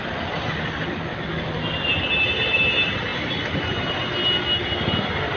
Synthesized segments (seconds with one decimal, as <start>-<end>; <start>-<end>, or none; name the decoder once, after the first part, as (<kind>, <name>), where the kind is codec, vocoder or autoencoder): 1.1-1.7 (autoencoder, DAC-VAE)